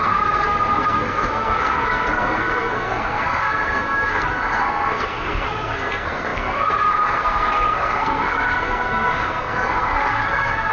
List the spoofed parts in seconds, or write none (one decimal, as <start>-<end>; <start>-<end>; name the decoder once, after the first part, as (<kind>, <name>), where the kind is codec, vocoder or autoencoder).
0.0-10.7 (codec, SNAC)